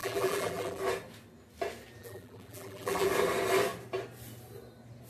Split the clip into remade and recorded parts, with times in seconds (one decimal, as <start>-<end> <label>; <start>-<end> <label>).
0.0-0.8 remade; 0.8-2.0 recorded; 2.0-3.1 remade; 3.1-5.1 recorded

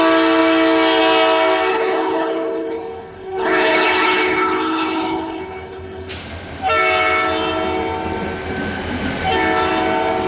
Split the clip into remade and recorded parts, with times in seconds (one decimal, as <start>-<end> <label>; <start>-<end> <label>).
0.0-1.7 recorded; 1.7-6.1 remade; 6.1-10.3 recorded

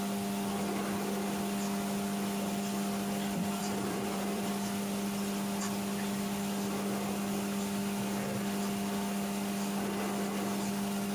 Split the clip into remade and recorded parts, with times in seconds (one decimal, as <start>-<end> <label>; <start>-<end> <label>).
0.0-3.6 recorded; 3.6-4.5 remade; 4.5-11.1 recorded

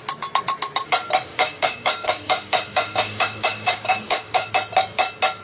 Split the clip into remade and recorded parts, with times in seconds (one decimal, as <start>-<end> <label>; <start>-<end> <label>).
0.0-1.3 recorded; 1.3-4.5 remade; 4.5-5.4 recorded

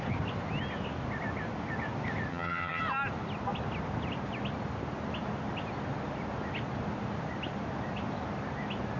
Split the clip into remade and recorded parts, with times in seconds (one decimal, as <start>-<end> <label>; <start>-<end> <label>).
0.0-2.3 recorded; 2.3-2.8 remade; 2.8-9.0 recorded

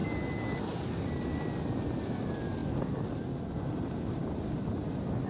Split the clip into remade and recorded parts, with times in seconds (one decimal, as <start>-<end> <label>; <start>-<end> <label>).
0.0-5.3 recorded

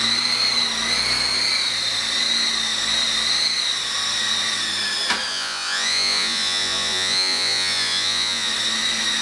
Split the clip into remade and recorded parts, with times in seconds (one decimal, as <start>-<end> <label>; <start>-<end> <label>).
0.0-5.3 recorded; 5.3-8.5 remade; 8.5-9.2 recorded

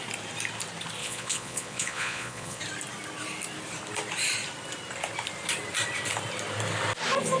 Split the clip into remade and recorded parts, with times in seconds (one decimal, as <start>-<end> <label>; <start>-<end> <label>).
0.0-1.0 recorded; 1.0-2.6 remade; 2.6-7.4 recorded